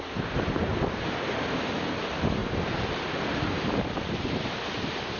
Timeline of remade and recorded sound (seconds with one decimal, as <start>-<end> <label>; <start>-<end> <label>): 0.0-0.7 remade; 0.7-1.9 recorded; 1.9-5.2 remade